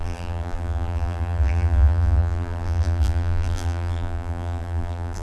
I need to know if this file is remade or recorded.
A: remade